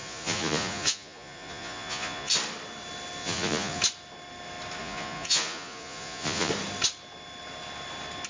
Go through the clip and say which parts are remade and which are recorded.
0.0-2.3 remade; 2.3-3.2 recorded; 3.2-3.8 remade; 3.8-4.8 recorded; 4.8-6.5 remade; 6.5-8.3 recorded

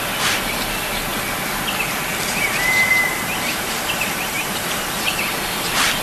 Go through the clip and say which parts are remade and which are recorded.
0.0-2.1 recorded; 2.1-5.2 remade; 5.2-6.0 recorded

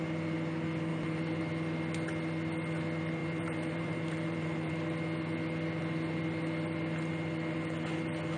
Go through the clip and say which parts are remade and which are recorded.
0.0-0.9 recorded; 0.9-1.4 remade; 1.4-3.2 recorded; 3.2-4.7 remade; 4.7-8.4 recorded